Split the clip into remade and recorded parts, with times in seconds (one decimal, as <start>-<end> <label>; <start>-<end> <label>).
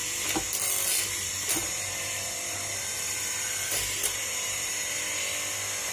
0.0-1.6 recorded; 1.6-5.1 remade; 5.1-5.9 recorded